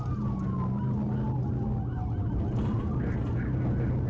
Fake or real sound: real